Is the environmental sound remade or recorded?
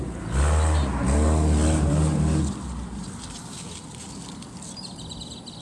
recorded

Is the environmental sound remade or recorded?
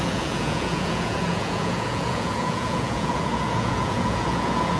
remade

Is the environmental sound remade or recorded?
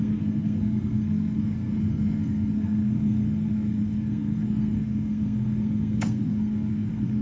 remade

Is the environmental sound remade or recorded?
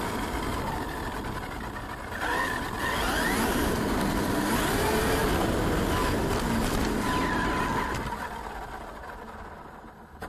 recorded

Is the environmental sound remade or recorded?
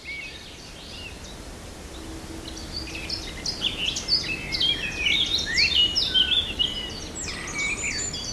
recorded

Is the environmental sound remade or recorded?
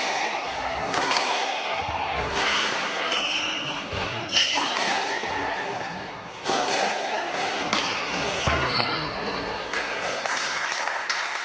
remade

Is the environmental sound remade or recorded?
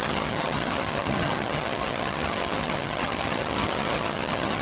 remade